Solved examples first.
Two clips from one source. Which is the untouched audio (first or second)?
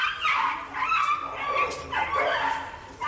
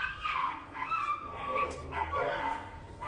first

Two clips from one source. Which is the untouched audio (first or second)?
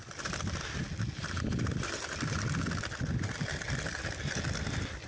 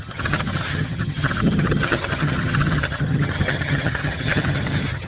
first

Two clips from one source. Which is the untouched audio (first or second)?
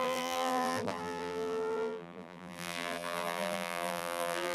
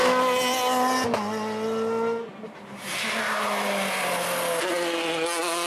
second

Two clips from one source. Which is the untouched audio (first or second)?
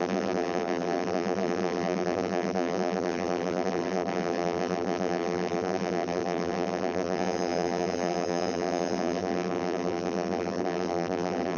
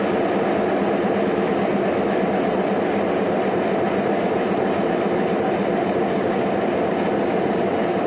second